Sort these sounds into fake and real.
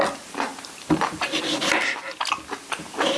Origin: real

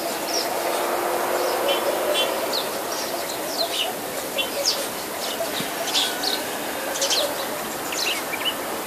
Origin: real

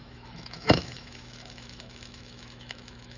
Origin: fake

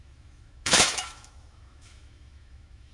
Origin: fake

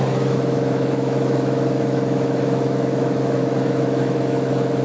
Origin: fake